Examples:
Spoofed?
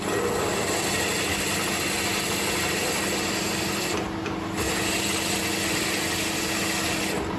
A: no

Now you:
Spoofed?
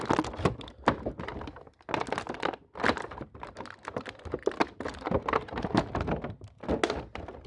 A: no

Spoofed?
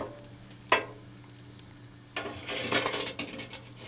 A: no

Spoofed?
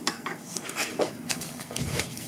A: yes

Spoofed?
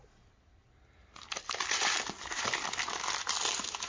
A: no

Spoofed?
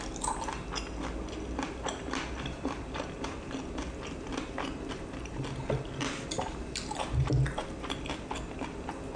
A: no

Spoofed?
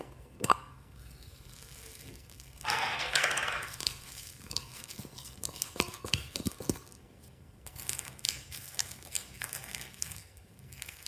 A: yes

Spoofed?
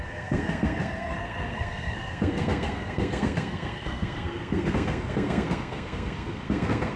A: yes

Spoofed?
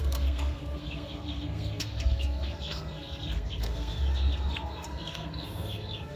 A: yes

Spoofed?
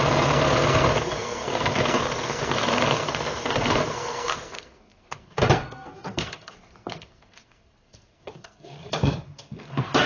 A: yes